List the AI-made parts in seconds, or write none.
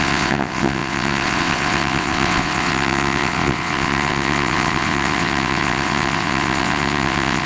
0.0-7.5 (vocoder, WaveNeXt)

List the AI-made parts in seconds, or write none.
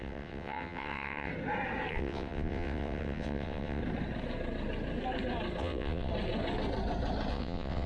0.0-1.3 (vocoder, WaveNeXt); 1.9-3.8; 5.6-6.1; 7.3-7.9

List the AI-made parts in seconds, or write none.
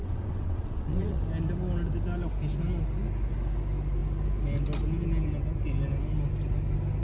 0.0-1.2 (vocoder, WaveNeXt)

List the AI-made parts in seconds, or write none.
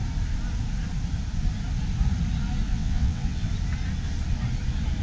2.7-3.5 (vocoder, WaveNeXt)